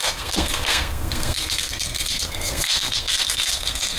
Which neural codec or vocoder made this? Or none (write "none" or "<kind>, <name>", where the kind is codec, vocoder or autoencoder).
codec, SNAC